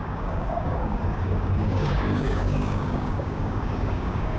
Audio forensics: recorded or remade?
remade